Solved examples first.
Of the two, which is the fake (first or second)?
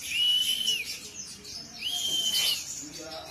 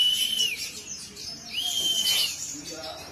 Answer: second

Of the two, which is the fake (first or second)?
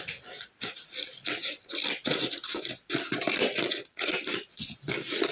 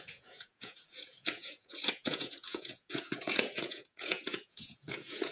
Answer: second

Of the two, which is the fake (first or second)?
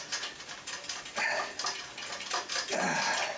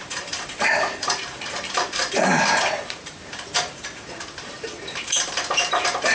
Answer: second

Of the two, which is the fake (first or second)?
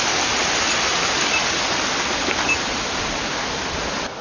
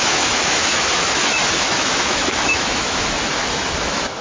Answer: second